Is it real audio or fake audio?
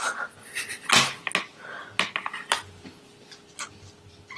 real